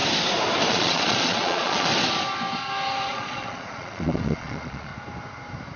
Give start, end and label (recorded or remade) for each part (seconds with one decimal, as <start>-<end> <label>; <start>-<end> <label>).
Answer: 0.0-0.7 recorded; 0.7-1.9 remade; 1.9-3.0 recorded; 3.0-4.9 remade; 4.9-5.8 recorded